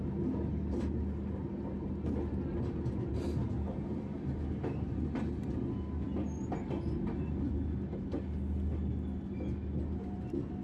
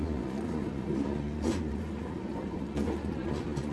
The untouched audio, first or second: first